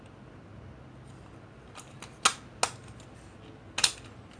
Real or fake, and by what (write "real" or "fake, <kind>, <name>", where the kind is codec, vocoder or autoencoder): real